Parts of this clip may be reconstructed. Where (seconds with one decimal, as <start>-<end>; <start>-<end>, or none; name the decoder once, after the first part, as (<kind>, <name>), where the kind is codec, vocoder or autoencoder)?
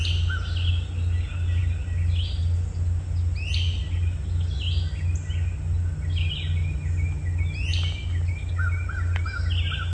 none